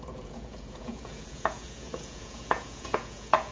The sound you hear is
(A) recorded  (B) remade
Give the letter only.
B